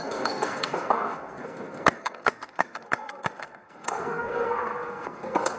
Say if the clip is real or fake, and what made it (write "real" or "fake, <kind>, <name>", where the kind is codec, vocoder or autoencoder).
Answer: fake, codec, SNAC